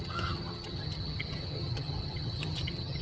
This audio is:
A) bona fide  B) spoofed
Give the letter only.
B